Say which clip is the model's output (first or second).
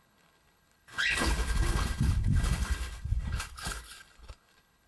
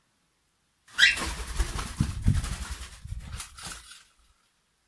first